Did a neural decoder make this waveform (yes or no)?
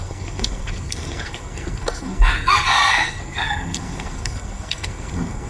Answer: yes